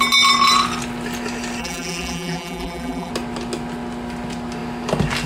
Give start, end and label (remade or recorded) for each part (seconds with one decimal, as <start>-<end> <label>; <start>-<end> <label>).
0.0-1.6 recorded; 1.6-3.1 remade; 3.1-5.3 recorded

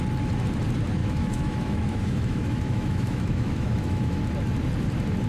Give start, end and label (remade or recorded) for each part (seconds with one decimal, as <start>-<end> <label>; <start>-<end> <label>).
0.0-1.0 recorded; 1.0-4.2 remade; 4.2-5.3 recorded

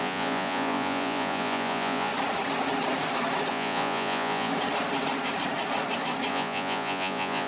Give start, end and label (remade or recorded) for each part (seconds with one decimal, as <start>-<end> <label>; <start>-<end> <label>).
0.0-2.1 remade; 2.1-3.5 recorded; 3.5-4.5 remade; 4.5-6.3 recorded; 6.3-7.5 remade

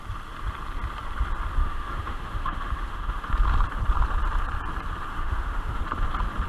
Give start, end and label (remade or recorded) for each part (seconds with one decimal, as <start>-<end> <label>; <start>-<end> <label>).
0.0-1.6 recorded; 1.6-3.3 remade; 3.3-5.1 recorded; 5.1-5.8 remade; 5.8-6.5 recorded

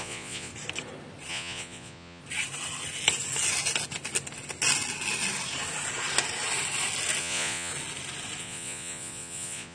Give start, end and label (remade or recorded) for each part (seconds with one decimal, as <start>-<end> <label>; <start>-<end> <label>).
0.0-0.5 remade; 0.5-1.3 recorded; 1.3-2.2 remade; 2.2-7.2 recorded; 7.2-7.7 remade; 7.7-8.4 recorded; 8.4-9.7 remade

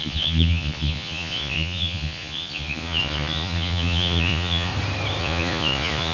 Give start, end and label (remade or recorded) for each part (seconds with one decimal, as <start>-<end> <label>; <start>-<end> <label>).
0.0-4.7 remade; 4.7-5.2 recorded; 5.2-6.1 remade